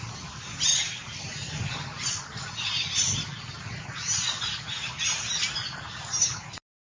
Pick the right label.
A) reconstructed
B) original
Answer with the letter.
B